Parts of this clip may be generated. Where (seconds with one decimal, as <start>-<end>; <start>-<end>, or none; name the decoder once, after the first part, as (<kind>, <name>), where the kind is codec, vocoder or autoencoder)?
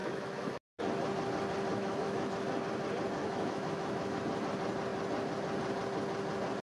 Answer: 0.0-0.8 (autoencoder, DAC-VAE); 1.7-2.3; 3.2-4.2